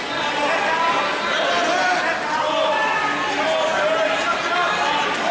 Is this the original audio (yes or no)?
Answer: yes